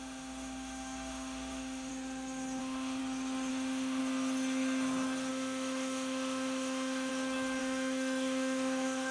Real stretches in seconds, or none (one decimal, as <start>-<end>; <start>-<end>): 1.9-2.6; 3.0-3.5; 4.0-5.3; 7.1-7.6